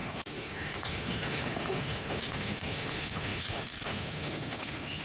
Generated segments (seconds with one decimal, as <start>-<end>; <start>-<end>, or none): 0.0-5.0